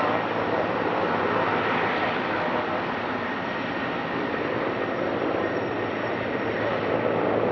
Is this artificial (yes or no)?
no